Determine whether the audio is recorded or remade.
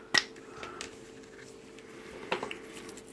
recorded